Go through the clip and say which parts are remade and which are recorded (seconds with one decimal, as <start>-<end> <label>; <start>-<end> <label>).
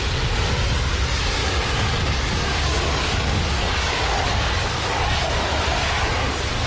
0.0-1.4 recorded; 1.4-5.4 remade; 5.4-6.7 recorded